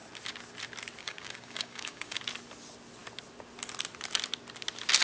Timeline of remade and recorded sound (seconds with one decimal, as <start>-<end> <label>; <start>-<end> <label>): 0.0-1.0 recorded; 1.0-2.2 remade; 2.2-5.0 recorded